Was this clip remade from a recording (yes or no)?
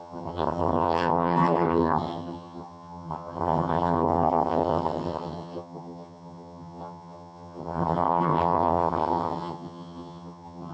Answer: yes